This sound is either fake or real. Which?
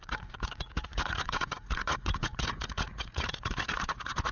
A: fake